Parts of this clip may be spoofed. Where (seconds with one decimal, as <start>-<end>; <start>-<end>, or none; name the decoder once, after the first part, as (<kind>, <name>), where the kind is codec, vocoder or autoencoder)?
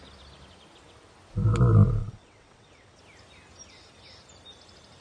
2.0-3.0 (vocoder, WaveNeXt)